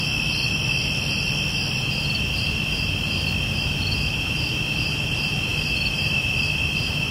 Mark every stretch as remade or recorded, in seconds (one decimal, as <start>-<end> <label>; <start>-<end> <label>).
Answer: 0.0-7.1 recorded

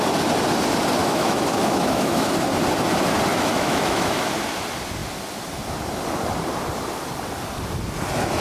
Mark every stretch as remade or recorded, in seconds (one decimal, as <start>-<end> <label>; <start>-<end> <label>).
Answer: 0.0-1.0 recorded; 1.0-2.3 remade; 2.3-3.3 recorded; 3.3-4.3 remade; 4.3-8.4 recorded

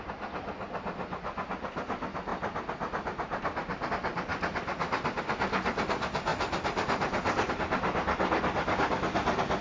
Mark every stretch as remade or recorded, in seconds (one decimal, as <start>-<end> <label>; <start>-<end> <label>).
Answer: 0.0-2.3 recorded; 2.3-3.9 remade; 3.9-4.3 recorded; 4.3-5.2 remade; 5.2-6.3 recorded; 6.3-7.5 remade; 7.5-9.6 recorded